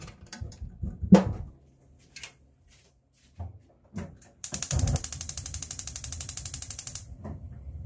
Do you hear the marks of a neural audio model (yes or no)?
yes